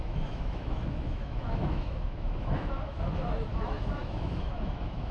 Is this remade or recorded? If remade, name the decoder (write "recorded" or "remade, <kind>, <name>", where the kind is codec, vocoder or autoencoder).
remade, autoencoder, DAC-VAE